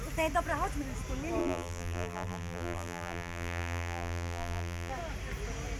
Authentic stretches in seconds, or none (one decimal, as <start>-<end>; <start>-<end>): 0.0-1.4; 4.9-5.8